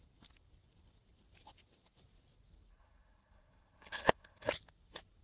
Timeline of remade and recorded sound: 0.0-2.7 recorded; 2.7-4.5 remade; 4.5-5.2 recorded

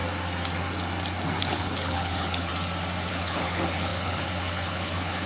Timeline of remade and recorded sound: 0.0-1.4 recorded; 1.4-2.5 remade; 2.5-3.1 recorded; 3.1-5.3 remade

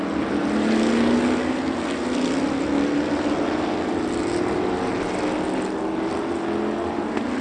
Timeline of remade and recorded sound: 0.0-7.4 recorded